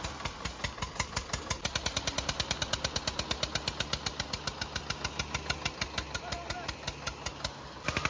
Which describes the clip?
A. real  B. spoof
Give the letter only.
A